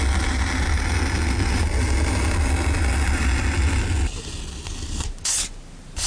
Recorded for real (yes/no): yes